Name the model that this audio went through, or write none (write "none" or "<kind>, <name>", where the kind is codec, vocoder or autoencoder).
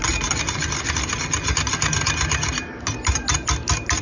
none